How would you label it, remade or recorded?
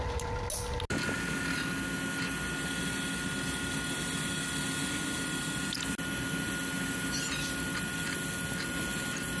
recorded